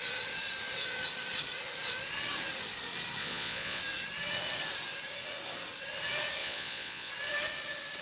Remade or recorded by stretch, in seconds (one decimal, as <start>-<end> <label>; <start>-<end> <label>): 0.0-3.2 recorded; 3.2-3.8 remade; 3.8-6.4 recorded; 6.4-7.1 remade; 7.1-8.0 recorded